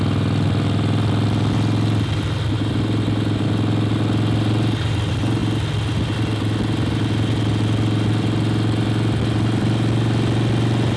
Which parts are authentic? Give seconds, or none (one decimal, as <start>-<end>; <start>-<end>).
0.0-11.0